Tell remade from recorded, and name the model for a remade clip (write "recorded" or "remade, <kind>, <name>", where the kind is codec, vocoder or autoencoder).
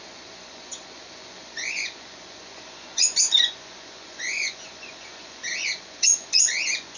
remade, vocoder, Vocos